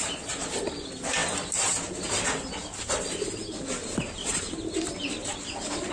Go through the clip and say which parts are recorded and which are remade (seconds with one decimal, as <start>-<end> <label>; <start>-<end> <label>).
0.0-3.8 recorded; 3.8-4.6 remade; 4.6-5.9 recorded